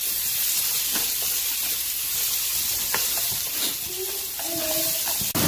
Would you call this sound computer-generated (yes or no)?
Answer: no